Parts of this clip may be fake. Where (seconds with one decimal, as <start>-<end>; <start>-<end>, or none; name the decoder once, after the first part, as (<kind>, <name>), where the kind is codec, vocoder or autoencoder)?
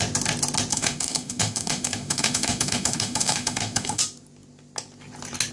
0.7-4.0 (autoencoder, DAC-VAE)